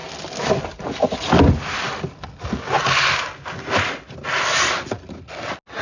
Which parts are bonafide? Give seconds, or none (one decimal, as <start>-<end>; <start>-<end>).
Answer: 0.0-5.8